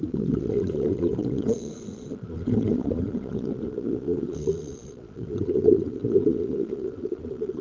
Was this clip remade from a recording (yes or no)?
yes